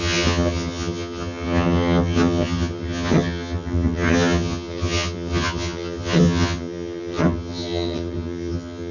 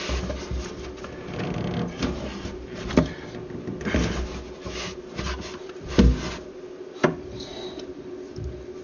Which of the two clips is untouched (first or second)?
second